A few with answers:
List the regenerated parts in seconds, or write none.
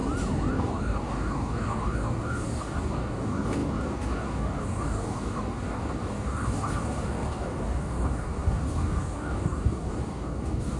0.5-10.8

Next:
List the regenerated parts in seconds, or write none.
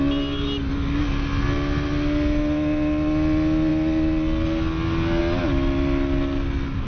none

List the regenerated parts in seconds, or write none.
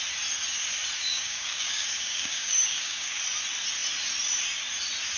1.1-3.2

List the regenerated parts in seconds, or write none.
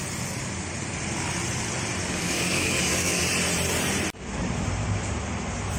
2.0-3.2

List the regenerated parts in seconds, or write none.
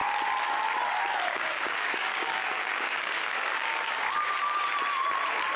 1.3-4.7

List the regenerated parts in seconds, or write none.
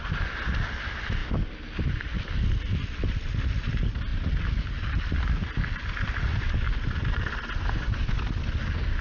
none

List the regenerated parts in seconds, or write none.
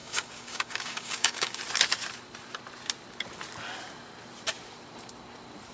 0.0-1.6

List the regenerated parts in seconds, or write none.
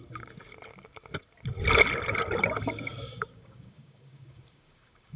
2.9-5.2